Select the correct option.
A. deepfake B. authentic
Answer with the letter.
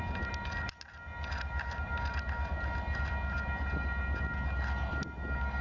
B